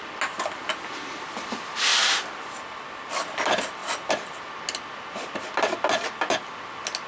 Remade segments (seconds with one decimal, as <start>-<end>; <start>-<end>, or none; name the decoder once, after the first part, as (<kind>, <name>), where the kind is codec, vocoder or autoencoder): none